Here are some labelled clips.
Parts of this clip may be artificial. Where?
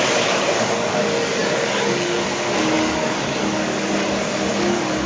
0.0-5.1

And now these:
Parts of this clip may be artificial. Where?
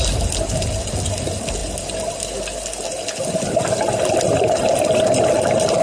none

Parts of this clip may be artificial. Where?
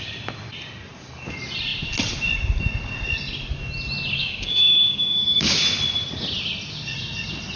4.2-5.6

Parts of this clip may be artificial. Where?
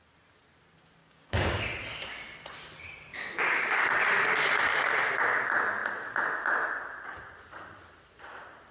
1.0-1.6; 3.1-3.8